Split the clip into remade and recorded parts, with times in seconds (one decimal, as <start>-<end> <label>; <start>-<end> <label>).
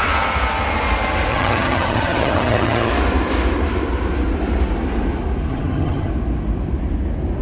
0.0-1.3 recorded; 1.3-2.9 remade; 2.9-5.5 recorded; 5.5-6.1 remade; 6.1-7.4 recorded